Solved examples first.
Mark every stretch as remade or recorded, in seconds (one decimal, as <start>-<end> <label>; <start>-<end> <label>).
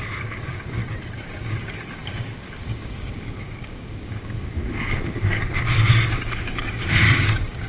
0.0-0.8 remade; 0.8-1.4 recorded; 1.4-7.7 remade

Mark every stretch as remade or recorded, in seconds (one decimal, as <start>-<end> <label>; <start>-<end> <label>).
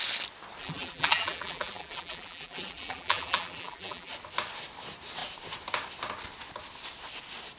0.0-0.6 recorded; 0.6-4.1 remade; 4.1-7.6 recorded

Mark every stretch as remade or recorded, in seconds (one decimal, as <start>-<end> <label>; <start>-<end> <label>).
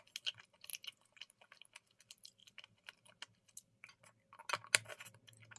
0.0-5.6 recorded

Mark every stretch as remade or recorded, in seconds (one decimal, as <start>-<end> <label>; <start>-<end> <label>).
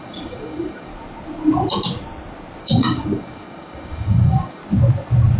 0.0-0.9 remade; 0.9-2.6 recorded; 2.6-4.6 remade; 4.6-5.4 recorded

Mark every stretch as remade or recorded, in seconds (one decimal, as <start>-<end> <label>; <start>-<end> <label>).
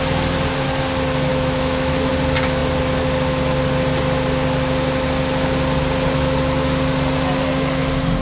0.0-1.3 recorded; 1.3-2.1 remade; 2.1-8.2 recorded